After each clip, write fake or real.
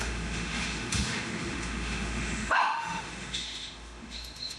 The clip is fake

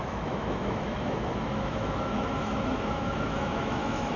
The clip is fake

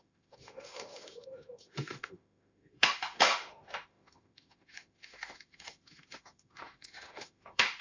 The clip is fake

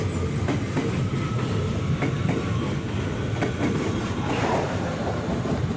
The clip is real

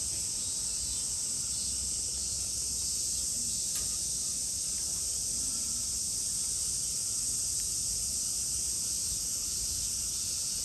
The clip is real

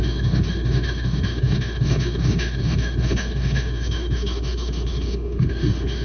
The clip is fake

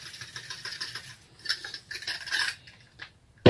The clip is real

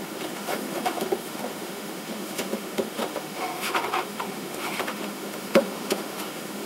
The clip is fake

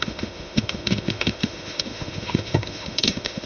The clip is fake